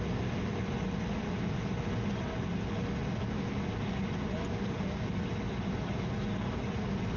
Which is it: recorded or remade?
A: recorded